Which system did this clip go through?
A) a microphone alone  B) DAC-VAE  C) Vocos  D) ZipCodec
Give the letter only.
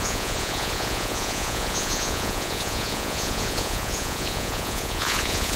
C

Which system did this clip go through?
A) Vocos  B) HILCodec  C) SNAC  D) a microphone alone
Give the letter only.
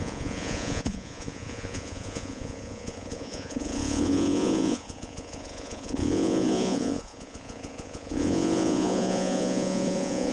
A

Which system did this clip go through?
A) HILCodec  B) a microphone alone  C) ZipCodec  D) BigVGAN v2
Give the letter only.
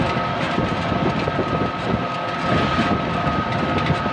B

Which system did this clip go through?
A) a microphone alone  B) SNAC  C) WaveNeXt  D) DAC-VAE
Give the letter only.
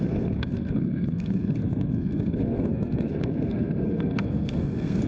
B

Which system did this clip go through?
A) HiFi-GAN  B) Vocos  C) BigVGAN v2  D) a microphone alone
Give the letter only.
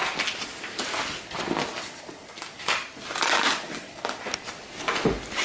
D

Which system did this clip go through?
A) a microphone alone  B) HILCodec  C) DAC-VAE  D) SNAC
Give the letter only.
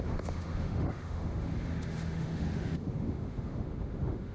C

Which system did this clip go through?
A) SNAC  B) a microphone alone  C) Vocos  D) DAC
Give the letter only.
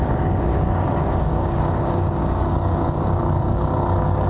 D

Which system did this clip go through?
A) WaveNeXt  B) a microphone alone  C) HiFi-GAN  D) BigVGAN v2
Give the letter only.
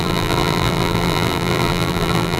D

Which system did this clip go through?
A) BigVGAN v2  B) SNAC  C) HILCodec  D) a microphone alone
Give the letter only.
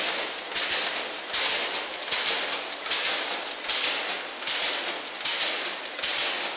D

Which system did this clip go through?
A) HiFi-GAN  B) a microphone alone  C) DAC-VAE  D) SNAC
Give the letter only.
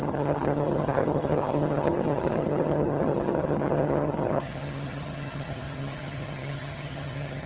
A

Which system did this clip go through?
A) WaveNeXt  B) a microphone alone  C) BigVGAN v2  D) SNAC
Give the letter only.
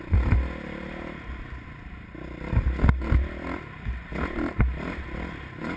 B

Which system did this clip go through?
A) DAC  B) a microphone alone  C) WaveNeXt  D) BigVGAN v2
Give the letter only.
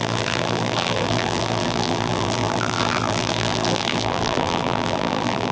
D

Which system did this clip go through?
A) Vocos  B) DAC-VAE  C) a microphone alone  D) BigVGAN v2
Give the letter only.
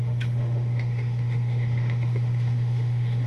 B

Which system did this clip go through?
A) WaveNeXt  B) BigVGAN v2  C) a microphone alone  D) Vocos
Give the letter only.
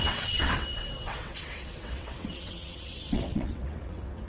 A